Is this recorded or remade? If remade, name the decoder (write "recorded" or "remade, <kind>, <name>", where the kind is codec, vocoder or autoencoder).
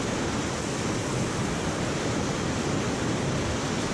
recorded